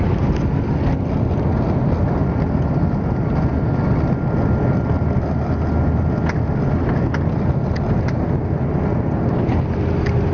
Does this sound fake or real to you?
real